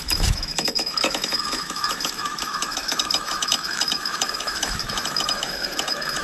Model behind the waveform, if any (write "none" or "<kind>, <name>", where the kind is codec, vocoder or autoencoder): autoencoder, DAC-VAE